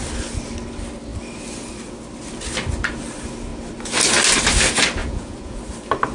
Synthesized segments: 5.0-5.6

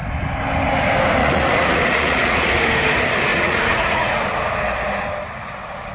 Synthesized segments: 1.2-2.5; 3.3-4.2

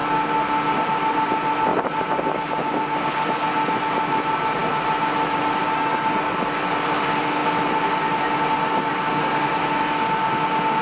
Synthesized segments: none

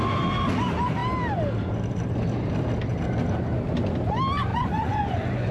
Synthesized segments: 4.5-5.5

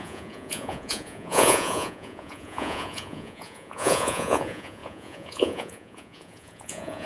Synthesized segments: 0.0-7.1

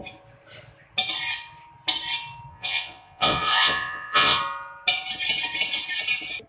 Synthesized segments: 2.5-4.4